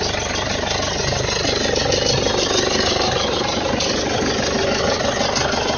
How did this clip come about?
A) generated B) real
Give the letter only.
B